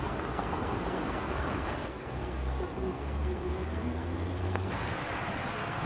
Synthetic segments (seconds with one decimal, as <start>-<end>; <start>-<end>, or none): 0.0-5.0; 5.5-5.9